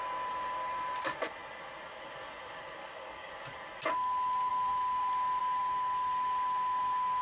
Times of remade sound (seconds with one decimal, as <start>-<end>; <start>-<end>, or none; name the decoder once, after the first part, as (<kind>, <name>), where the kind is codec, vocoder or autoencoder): 2.8-3.3 (codec, DAC)